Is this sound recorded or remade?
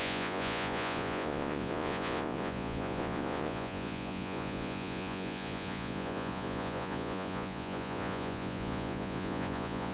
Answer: remade